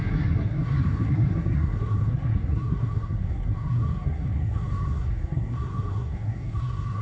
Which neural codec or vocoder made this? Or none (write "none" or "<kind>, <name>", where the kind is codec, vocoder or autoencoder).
codec, SNAC